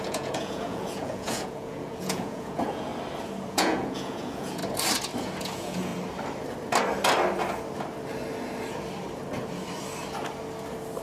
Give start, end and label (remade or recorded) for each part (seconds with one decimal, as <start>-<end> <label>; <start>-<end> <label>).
0.0-2.9 remade; 2.9-3.5 recorded; 3.5-4.6 remade; 4.6-5.4 recorded; 5.4-5.9 remade; 5.9-11.0 recorded